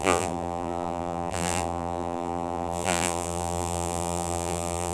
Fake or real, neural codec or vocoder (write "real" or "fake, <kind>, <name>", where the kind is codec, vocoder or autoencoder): fake, vocoder, BigVGAN v2